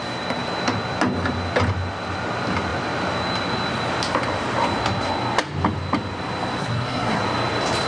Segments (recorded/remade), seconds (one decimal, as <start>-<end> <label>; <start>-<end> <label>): 0.0-6.6 recorded; 6.6-7.2 remade; 7.2-7.9 recorded

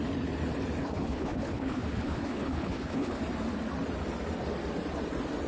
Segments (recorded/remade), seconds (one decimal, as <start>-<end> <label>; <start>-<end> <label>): 0.0-0.8 recorded; 0.8-3.2 remade; 3.2-5.5 recorded

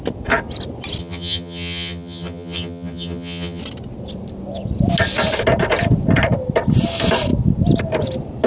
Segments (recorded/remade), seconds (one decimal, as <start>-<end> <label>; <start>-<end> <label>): 0.0-1.0 recorded; 1.0-3.6 remade; 3.6-8.5 recorded

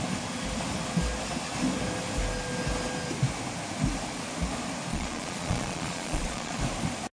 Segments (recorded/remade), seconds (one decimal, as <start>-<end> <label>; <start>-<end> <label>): 0.0-4.9 recorded; 4.9-6.6 remade; 6.6-7.2 recorded

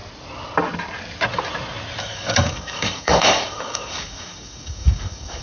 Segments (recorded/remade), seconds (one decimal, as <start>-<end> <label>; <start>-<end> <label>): 0.0-2.0 recorded; 2.0-5.4 remade

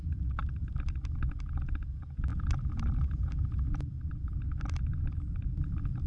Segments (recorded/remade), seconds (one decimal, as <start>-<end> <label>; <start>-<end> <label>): 0.0-2.3 recorded; 2.3-6.1 remade

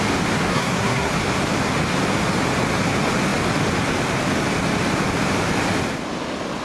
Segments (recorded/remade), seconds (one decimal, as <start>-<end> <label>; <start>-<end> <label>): 0.0-0.5 recorded; 0.5-1.1 remade; 1.1-6.6 recorded